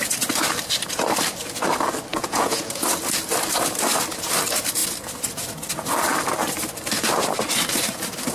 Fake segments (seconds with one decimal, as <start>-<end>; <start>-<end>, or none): 2.1-2.8